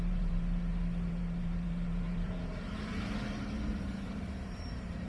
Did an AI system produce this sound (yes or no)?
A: yes